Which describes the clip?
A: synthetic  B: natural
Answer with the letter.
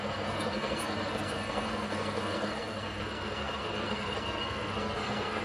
A